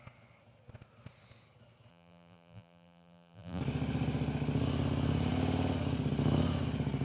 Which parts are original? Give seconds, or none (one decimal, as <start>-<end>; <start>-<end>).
0.0-1.9; 3.6-7.0